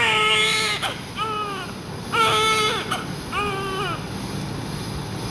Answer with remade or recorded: recorded